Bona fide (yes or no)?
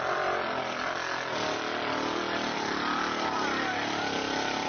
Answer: no